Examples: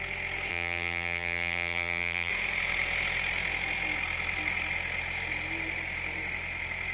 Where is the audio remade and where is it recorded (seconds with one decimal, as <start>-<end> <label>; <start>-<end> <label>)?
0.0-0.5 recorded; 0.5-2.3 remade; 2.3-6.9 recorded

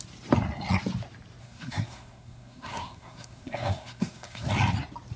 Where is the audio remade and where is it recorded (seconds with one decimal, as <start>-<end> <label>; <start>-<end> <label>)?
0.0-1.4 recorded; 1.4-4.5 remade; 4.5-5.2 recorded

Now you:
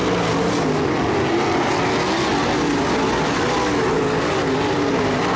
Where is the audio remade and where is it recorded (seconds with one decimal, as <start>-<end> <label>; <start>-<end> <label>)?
0.0-5.4 recorded

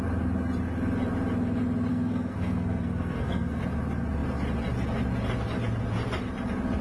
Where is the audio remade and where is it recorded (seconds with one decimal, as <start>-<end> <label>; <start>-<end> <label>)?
0.0-1.9 recorded; 1.9-3.6 remade; 3.6-6.8 recorded

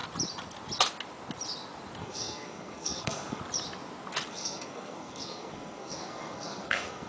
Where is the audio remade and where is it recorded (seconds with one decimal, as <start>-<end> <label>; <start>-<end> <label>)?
0.0-2.0 recorded; 2.0-3.4 remade; 3.4-4.3 recorded; 4.3-7.1 remade

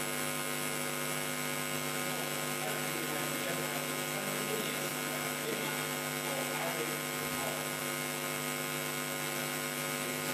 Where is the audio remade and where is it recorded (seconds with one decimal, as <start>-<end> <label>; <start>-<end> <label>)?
0.0-10.3 recorded

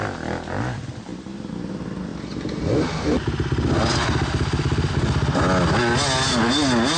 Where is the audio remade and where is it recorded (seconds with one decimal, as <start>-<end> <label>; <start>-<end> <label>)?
0.0-1.1 recorded; 1.1-1.6 remade; 1.6-7.0 recorded

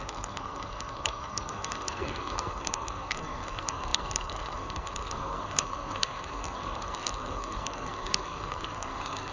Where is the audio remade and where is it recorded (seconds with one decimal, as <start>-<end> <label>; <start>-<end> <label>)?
0.0-9.3 remade